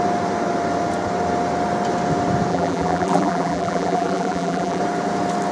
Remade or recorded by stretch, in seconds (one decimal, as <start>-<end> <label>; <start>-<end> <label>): 0.0-2.5 recorded; 2.5-4.8 remade; 4.8-5.5 recorded